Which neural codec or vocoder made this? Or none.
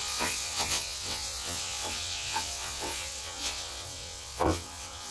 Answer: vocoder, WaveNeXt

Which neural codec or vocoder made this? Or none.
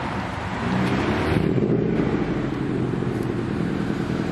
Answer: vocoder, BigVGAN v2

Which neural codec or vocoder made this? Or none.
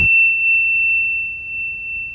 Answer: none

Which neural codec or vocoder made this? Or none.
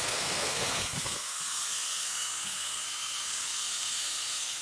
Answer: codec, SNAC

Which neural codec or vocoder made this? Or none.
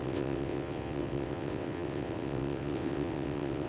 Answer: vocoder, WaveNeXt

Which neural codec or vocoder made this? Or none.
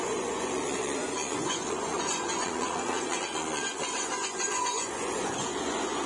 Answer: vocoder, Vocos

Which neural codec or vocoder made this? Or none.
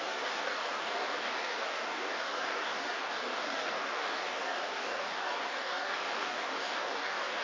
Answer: codec, DAC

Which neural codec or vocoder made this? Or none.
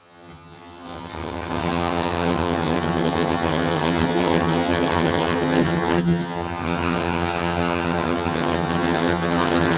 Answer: vocoder, HiFi-GAN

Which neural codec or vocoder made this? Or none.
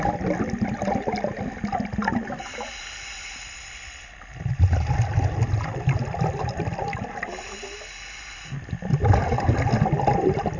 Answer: none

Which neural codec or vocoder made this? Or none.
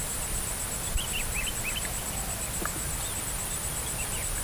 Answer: vocoder, BigVGAN v2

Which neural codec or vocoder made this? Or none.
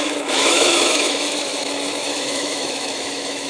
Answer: autoencoder, DAC-VAE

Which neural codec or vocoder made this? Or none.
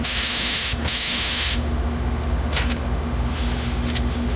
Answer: autoencoder, DAC-VAE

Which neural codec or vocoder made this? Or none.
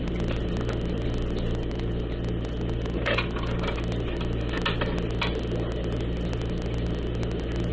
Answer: none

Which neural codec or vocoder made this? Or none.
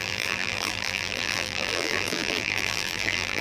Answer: vocoder, BigVGAN v2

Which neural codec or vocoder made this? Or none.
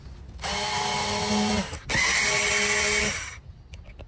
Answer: none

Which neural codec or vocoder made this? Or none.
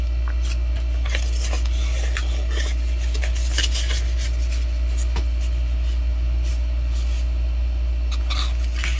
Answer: none